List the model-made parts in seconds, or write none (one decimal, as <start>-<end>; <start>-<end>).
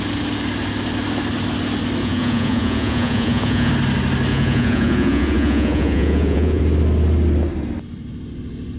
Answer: 2.0-3.7; 4.3-6.6